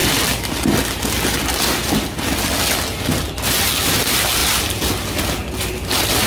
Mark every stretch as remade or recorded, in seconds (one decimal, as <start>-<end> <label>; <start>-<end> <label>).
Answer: 0.0-6.3 recorded